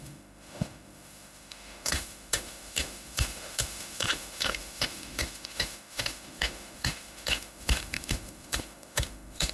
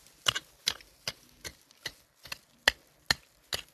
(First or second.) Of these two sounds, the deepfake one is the first